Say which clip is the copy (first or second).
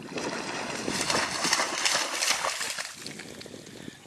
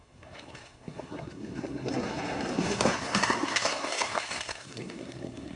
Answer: second